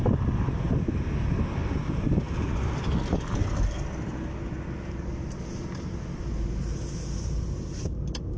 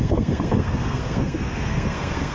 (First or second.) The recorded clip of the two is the first